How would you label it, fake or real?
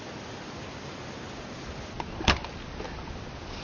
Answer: real